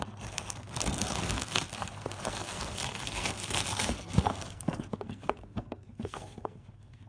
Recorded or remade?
remade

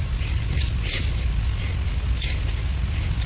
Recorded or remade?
recorded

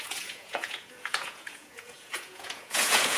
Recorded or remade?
remade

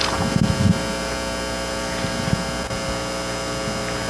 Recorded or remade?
recorded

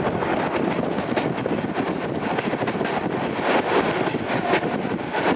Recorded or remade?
recorded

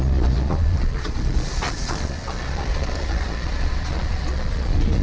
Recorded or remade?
remade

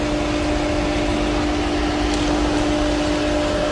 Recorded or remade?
recorded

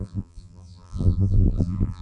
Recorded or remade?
remade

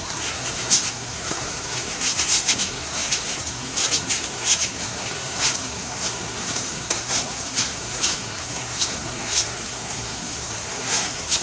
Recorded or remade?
remade